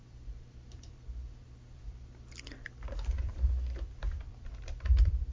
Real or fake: fake